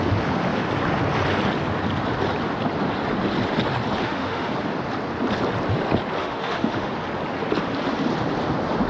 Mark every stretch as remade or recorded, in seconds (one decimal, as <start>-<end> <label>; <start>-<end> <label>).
0.0-4.0 recorded; 4.0-4.5 remade; 4.5-6.2 recorded; 6.2-6.9 remade; 6.9-8.9 recorded